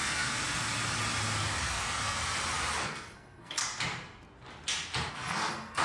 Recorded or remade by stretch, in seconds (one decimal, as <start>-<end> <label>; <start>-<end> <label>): 0.0-0.4 remade; 0.4-1.6 recorded; 1.6-2.2 remade; 2.2-2.8 recorded; 2.8-3.6 remade; 3.6-5.1 recorded; 5.1-5.8 remade